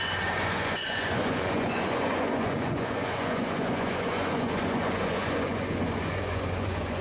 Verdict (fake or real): fake